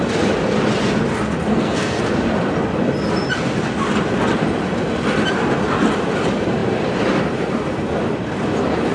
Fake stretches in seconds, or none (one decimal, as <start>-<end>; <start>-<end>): 1.5-2.0